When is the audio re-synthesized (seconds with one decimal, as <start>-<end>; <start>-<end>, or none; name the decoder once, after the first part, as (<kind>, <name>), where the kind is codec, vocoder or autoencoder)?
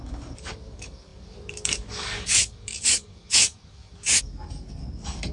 0.0-5.3 (codec, DAC)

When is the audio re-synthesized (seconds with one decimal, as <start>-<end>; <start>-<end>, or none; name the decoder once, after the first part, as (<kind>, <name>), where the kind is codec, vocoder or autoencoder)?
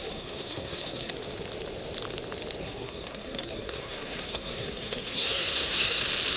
0.0-1.1 (codec, SNAC); 2.6-6.0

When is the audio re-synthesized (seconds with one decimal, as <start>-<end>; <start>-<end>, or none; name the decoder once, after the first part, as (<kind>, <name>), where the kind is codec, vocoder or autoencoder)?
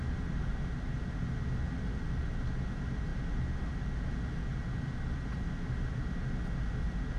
none